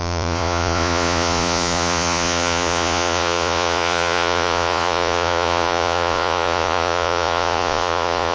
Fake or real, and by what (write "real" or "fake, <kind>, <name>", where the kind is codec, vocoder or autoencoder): fake, vocoder, Vocos